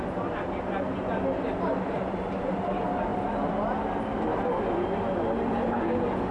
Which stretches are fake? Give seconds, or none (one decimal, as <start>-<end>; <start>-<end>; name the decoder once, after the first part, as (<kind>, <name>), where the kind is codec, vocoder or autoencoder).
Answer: 0.0-6.3 (vocoder, BigVGAN v2)